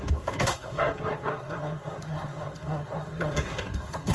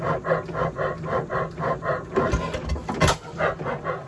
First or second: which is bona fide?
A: second